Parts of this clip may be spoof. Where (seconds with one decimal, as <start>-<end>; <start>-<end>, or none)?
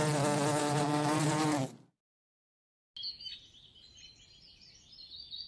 0.6-2.8